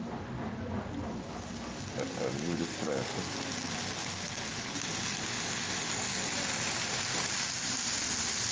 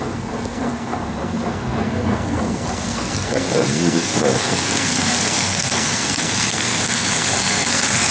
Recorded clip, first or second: first